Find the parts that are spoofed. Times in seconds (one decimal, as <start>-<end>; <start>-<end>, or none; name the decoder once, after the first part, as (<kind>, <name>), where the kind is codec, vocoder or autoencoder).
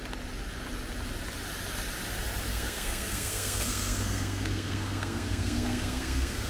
2.5-6.5 (codec, SNAC)